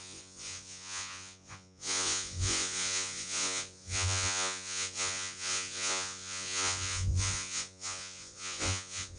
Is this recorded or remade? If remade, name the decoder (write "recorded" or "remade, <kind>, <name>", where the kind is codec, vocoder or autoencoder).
remade, vocoder, Vocos